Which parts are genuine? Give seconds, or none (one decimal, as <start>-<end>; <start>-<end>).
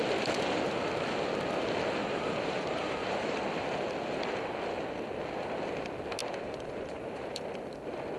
0.0-2.0; 3.4-6.2; 7.4-8.2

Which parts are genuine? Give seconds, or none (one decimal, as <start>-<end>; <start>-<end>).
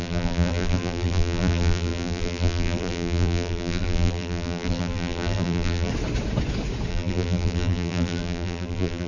5.9-6.9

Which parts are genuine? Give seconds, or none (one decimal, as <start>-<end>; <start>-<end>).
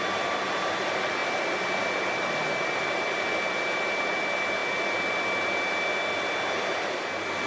0.0-7.5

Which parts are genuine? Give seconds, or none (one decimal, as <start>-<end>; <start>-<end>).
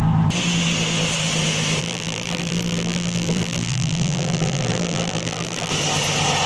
0.0-1.8; 5.7-6.5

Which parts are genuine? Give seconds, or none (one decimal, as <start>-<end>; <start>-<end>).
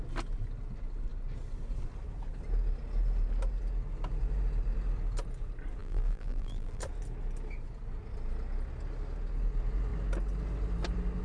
0.0-5.8; 6.8-11.2